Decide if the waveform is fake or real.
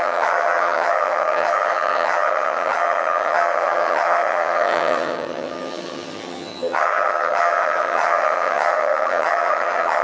fake